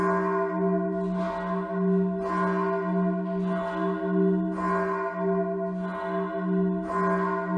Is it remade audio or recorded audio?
recorded